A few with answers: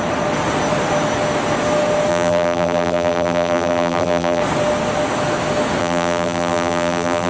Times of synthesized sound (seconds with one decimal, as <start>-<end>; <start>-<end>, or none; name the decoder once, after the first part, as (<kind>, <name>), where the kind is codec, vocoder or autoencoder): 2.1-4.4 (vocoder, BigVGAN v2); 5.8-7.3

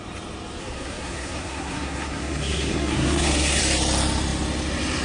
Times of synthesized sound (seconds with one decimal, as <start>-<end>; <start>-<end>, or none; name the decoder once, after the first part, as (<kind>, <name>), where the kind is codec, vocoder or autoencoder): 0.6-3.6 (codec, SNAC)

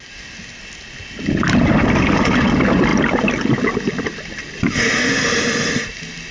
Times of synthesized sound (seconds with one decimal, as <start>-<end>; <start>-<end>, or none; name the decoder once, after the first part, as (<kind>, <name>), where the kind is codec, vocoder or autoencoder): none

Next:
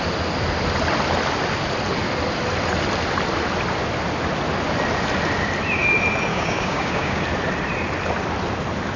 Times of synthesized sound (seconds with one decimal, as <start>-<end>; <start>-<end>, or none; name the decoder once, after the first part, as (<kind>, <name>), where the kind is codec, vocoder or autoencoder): 6.3-7.2 (codec, DAC)